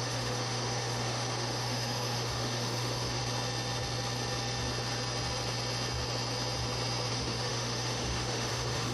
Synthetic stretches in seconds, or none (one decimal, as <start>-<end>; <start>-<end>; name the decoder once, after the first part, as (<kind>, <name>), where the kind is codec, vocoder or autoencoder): 0.0-3.2 (autoencoder, DAC-VAE); 7.1-8.9